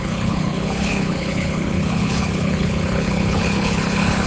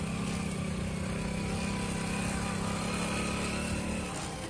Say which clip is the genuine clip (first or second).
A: second